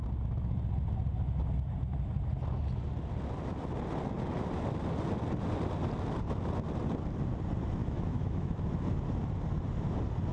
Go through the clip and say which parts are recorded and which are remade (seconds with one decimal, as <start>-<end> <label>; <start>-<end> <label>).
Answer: 0.0-7.8 recorded; 7.8-8.6 remade; 8.6-10.3 recorded